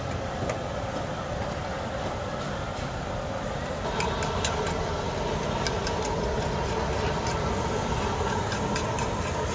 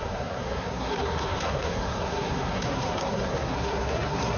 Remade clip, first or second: second